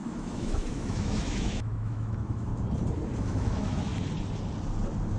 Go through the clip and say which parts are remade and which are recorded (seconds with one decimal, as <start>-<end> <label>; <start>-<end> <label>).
0.0-2.5 remade; 2.5-3.2 recorded; 3.2-3.9 remade; 3.9-5.2 recorded